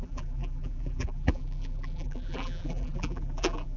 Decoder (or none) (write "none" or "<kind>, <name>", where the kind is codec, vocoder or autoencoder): vocoder, BigVGAN v2